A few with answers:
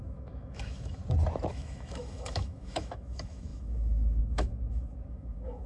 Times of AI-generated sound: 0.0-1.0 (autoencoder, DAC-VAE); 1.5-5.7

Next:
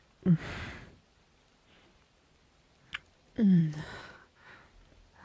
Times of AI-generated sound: 3.6-4.6 (autoencoder, DAC-VAE)

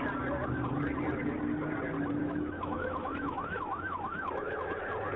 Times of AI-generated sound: 2.2-4.8 (autoencoder, DAC-VAE)

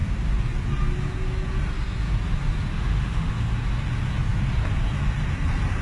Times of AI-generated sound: 2.7-3.3 (autoencoder, DAC-VAE)

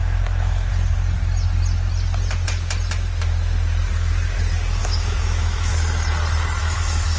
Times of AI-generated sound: 0.0-0.7 (autoencoder, DAC-VAE); 4.8-5.7; 6.6-7.2

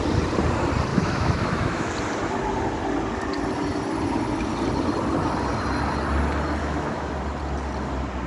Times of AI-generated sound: 0.9-1.9 (autoencoder, DAC-VAE); 6.6-7.1

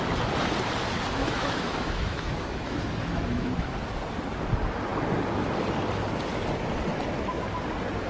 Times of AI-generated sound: 1.2-3.7 (autoencoder, DAC-VAE)